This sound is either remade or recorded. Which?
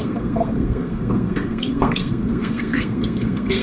remade